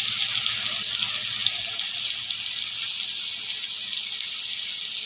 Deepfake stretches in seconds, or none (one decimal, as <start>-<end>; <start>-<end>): none